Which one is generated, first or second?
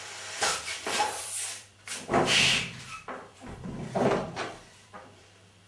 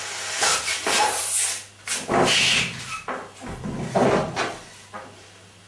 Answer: first